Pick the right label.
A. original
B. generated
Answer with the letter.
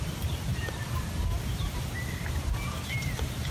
A